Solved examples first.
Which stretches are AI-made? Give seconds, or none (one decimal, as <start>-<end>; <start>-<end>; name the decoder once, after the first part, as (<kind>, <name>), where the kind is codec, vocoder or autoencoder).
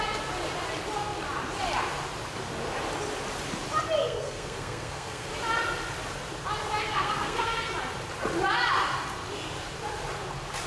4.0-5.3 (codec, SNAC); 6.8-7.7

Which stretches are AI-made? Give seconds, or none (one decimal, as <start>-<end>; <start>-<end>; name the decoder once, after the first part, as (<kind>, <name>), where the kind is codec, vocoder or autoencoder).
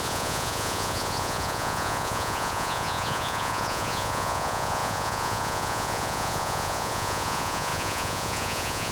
0.0-8.9 (vocoder, Vocos)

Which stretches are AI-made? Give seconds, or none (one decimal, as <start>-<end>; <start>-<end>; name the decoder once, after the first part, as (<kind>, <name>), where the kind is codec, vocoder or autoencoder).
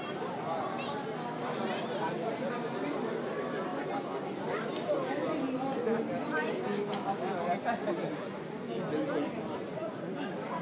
none